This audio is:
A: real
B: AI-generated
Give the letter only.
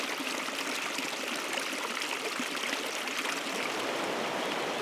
A